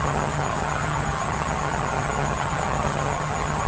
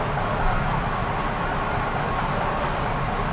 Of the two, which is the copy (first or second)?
first